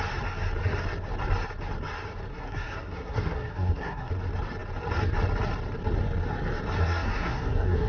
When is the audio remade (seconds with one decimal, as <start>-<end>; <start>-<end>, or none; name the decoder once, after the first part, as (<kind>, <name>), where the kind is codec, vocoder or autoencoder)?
2.3-4.1 (codec, SNAC); 6.8-7.9